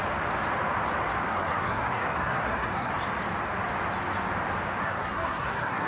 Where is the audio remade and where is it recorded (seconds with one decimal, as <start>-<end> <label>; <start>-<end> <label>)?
0.0-1.3 recorded; 1.3-2.9 remade; 2.9-4.8 recorded; 4.8-5.9 remade